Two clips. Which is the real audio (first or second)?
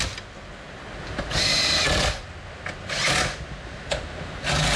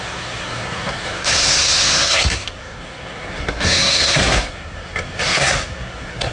first